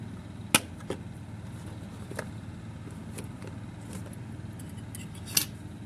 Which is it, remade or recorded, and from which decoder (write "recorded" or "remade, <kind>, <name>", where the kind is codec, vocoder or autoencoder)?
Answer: recorded